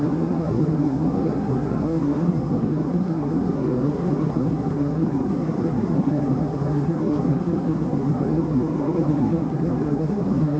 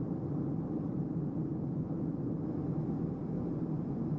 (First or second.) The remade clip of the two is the first